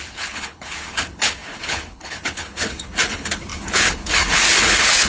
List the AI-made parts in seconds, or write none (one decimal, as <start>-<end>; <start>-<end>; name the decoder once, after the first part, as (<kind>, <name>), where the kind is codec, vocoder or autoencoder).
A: 0.0-5.1 (codec, HILCodec)